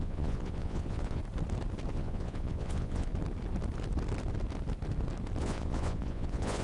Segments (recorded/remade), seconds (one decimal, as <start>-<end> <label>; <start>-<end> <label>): 0.0-1.2 remade; 1.2-1.9 recorded; 1.9-3.1 remade; 3.1-5.4 recorded; 5.4-6.6 remade